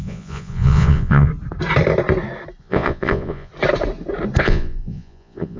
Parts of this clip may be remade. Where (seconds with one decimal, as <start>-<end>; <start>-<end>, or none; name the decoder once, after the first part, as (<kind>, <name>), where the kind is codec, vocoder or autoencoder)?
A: 0.0-1.3 (vocoder, Vocos); 2.6-3.5; 4.4-5.6